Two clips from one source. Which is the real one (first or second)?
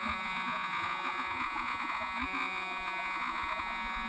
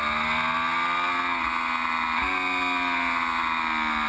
second